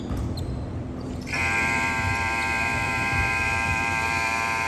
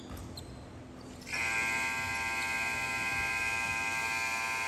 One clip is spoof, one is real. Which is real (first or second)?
second